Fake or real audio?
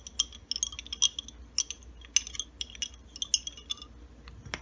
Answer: real